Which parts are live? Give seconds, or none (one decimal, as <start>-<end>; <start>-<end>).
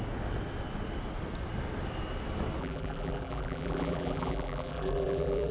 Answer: 0.0-2.6